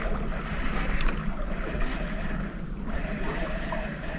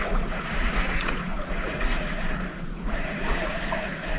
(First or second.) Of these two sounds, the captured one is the first